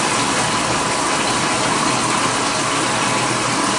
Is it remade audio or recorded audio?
recorded